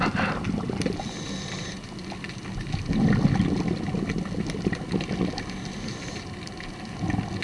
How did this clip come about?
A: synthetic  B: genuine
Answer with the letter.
B